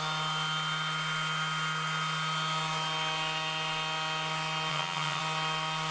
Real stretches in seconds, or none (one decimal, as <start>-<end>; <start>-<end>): 0.0-4.7; 5.2-5.9